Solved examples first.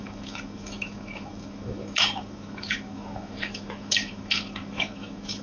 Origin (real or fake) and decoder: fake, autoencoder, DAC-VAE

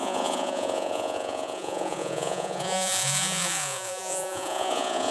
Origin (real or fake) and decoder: fake, vocoder, Vocos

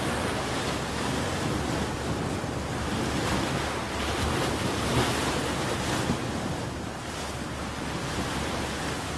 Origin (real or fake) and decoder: real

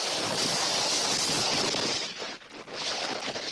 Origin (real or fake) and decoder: fake, vocoder, BigVGAN v2